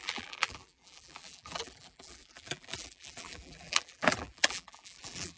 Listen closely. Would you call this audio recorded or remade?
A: remade